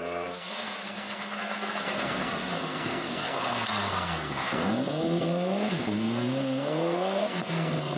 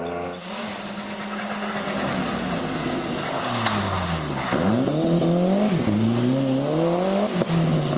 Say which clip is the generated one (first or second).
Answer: first